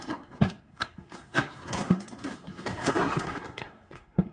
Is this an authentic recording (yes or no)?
no